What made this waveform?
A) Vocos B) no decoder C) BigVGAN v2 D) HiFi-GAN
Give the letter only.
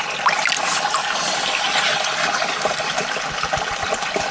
C